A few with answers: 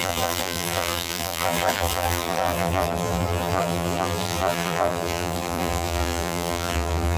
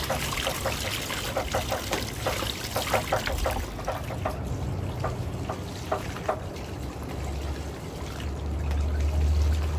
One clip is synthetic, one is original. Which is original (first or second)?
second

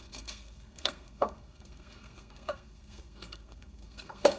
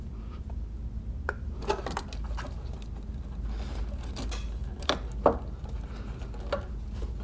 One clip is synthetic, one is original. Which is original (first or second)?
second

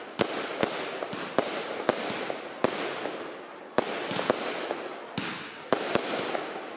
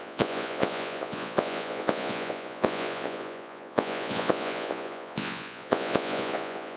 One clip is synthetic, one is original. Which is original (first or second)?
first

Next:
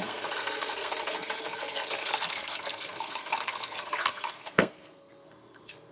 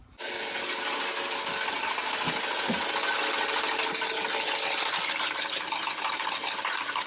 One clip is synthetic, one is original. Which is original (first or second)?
second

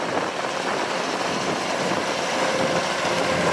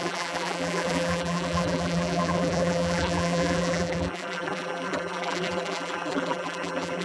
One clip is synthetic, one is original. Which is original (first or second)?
first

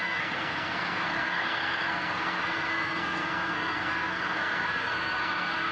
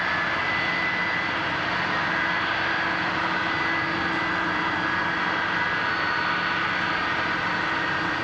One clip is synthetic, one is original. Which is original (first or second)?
second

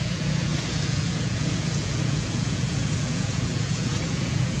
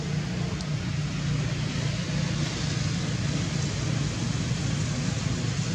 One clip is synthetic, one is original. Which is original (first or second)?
second